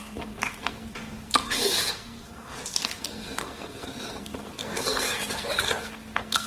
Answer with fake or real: fake